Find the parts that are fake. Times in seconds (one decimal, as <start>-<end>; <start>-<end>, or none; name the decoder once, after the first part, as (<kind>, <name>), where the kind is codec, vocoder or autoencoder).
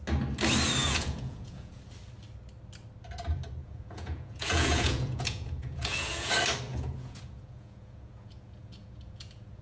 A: 0.8-1.8 (vocoder, Vocos); 3.6-6.3; 6.7-9.6